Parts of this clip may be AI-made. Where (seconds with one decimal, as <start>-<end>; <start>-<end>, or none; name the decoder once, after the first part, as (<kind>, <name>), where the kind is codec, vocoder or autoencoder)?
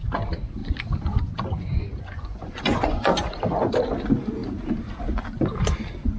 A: 1.9-3.4 (vocoder, Vocos)